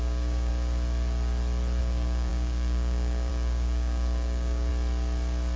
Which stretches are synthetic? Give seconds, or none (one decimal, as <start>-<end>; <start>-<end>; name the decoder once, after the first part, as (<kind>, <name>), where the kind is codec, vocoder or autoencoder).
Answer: 0.0-0.5 (codec, DAC); 1.8-4.7